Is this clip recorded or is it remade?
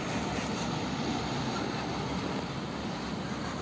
recorded